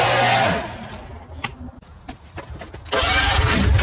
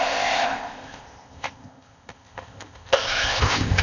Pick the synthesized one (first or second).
second